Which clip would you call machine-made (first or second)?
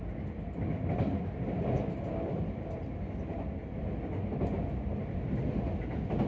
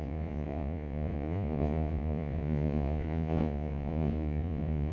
second